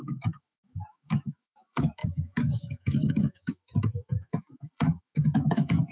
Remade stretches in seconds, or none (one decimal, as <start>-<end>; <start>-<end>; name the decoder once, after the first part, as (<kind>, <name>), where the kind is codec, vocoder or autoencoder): 0.0-5.9 (autoencoder, DAC-VAE)

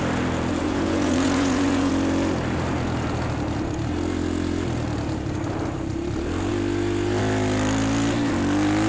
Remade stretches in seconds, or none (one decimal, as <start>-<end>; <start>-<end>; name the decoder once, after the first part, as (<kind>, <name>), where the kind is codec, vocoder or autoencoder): 0.6-1.9 (vocoder, Vocos)

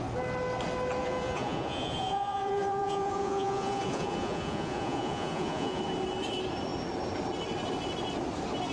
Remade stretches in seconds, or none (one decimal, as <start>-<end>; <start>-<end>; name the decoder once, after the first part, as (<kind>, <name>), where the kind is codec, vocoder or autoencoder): 1.0-5.8 (vocoder, Vocos)

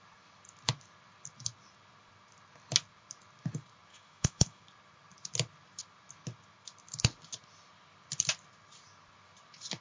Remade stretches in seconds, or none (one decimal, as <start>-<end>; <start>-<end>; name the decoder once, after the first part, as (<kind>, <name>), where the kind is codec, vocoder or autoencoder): 3.9-4.6 (autoencoder, DAC-VAE)

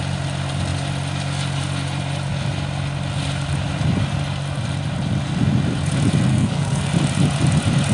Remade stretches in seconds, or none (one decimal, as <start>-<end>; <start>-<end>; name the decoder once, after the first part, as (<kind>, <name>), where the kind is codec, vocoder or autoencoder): 6.3-6.9 (codec, SNAC)

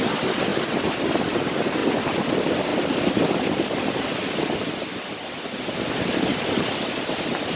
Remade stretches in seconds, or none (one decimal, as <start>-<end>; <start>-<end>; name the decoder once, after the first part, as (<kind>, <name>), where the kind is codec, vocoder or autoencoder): 2.7-7.1 (vocoder, BigVGAN v2)